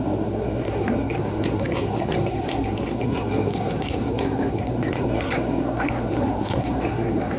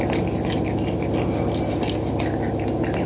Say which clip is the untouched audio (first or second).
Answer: second